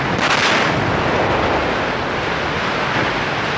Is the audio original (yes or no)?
yes